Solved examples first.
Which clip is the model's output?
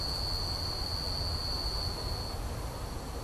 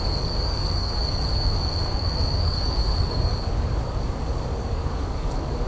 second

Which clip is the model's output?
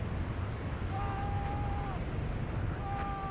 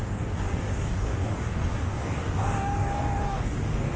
second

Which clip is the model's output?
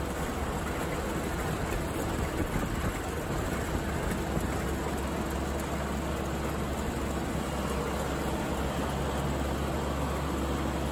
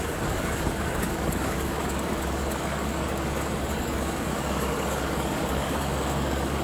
second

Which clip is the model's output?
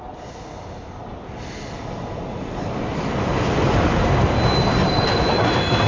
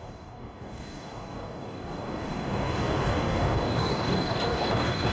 second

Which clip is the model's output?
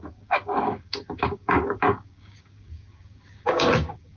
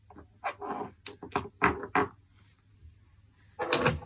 first